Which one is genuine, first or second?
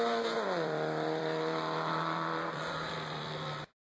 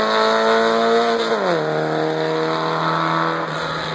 second